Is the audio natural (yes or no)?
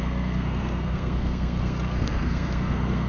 no